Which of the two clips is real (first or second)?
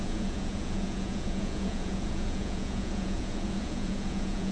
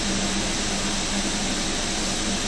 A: second